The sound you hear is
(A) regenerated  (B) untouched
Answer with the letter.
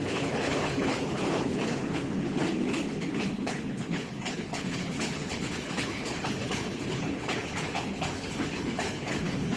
A